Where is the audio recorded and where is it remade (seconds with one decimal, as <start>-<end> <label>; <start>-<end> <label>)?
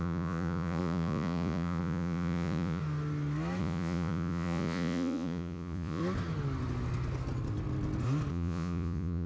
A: 0.0-2.8 remade; 2.8-3.6 recorded; 3.6-6.0 remade; 6.0-8.3 recorded; 8.3-9.3 remade